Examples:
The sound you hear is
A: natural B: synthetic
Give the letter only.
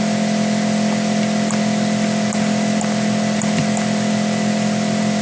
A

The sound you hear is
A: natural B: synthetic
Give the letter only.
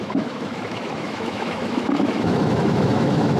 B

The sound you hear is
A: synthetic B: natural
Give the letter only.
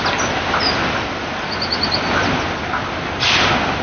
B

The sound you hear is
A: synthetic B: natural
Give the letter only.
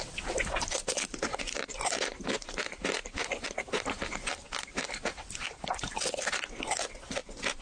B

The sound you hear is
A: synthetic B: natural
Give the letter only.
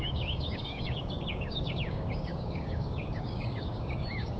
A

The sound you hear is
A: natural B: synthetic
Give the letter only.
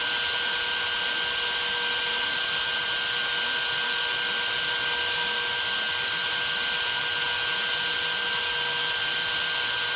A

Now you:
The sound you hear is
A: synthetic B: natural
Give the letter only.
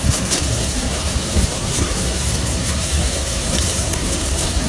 A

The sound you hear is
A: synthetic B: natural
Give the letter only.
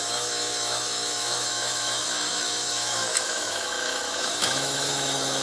A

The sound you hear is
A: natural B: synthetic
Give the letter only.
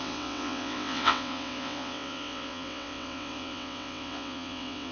B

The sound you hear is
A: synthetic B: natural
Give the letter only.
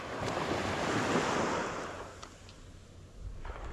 B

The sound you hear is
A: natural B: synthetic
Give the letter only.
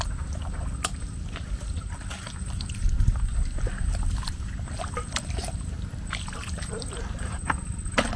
A